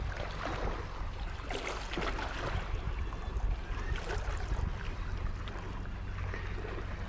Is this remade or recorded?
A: recorded